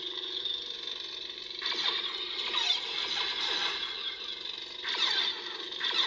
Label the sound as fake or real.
real